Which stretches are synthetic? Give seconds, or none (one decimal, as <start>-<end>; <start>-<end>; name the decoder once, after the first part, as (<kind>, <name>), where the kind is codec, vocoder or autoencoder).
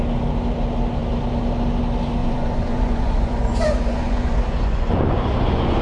2.2-5.8 (vocoder, Vocos)